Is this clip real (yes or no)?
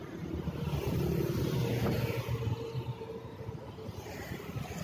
yes